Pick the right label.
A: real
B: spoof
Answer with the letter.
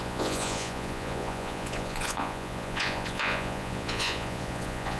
B